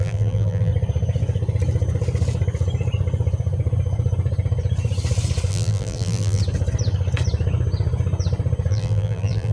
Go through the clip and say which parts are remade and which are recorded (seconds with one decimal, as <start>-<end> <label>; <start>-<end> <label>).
0.0-0.7 remade; 0.7-5.5 recorded; 5.5-6.4 remade; 6.4-8.7 recorded; 8.7-9.5 remade

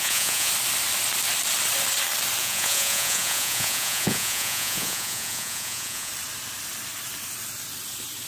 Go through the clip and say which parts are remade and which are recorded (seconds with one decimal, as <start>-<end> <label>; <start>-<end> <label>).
0.0-0.5 remade; 0.5-2.4 recorded; 2.4-6.1 remade; 6.1-8.3 recorded

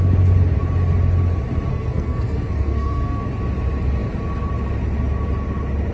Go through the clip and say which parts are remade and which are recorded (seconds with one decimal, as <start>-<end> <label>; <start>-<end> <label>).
0.0-1.7 recorded; 1.7-3.2 remade; 3.2-5.9 recorded

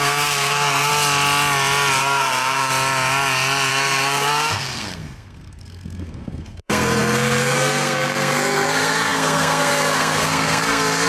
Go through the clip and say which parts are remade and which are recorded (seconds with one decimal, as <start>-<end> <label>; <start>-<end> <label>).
0.0-0.9 remade; 0.9-2.0 recorded; 2.0-2.7 remade; 2.7-3.7 recorded; 3.7-11.1 remade

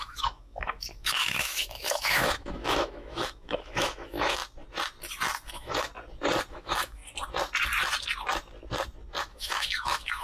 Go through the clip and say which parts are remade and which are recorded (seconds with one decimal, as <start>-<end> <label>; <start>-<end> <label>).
0.0-4.4 remade; 4.4-5.5 recorded; 5.5-5.9 remade; 5.9-6.5 recorded; 6.5-7.0 remade; 7.0-9.2 recorded; 9.2-10.2 remade